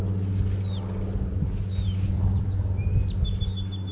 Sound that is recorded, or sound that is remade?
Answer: recorded